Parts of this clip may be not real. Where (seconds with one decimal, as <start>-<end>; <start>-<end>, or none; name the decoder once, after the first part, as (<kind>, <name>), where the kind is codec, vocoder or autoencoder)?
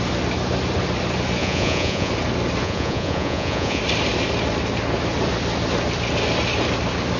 1.4-2.1 (vocoder, Vocos); 2.6-3.8